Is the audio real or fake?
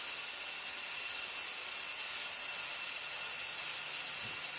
real